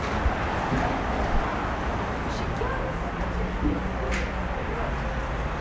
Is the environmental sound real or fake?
real